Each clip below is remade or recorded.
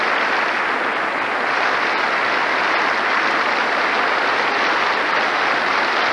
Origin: recorded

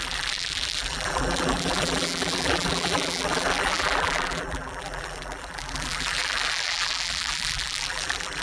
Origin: remade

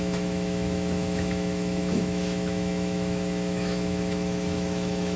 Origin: remade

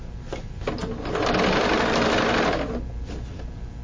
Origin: recorded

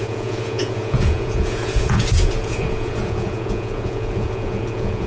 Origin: remade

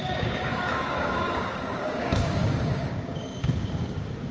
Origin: remade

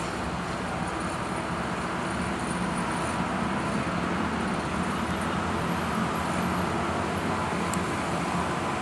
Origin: recorded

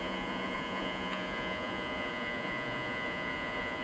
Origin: remade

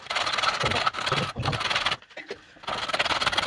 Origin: recorded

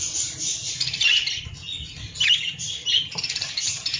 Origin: recorded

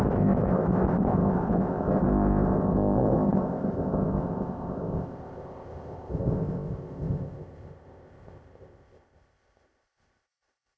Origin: remade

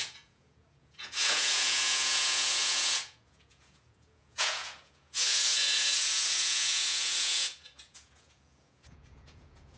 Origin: remade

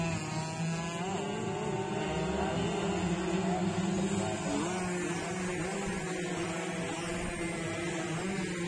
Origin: recorded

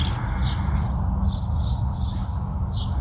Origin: recorded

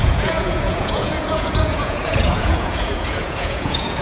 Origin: remade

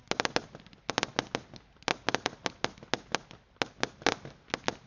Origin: recorded